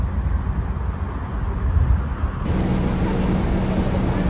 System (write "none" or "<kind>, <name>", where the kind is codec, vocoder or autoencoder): none